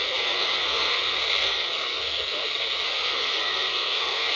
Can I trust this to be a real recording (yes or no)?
no